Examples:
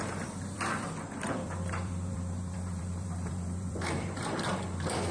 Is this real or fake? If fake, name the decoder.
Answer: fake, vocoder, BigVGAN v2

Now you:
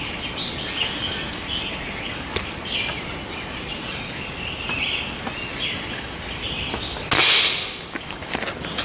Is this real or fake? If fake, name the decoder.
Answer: real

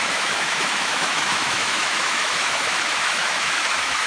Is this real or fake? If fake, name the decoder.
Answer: fake, autoencoder, DAC-VAE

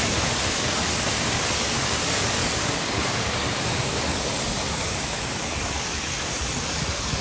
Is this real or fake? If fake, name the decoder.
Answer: fake, codec, DAC